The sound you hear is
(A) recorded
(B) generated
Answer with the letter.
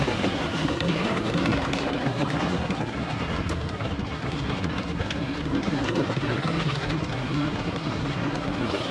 B